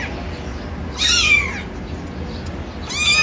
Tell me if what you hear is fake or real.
real